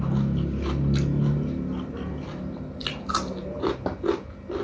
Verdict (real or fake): real